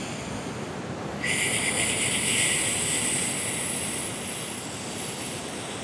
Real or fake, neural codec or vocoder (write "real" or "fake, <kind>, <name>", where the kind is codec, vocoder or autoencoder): real